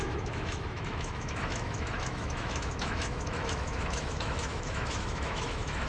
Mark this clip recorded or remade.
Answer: remade